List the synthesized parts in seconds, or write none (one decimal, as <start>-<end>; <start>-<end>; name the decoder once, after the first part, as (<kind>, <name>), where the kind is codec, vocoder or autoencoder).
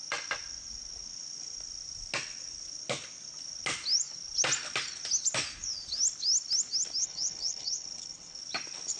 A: 7.0-8.4 (codec, HILCodec)